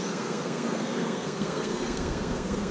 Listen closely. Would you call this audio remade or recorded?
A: remade